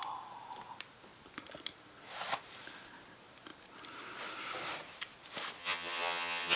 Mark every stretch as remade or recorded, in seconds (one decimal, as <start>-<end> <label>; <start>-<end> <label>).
0.0-5.6 recorded; 5.6-6.6 remade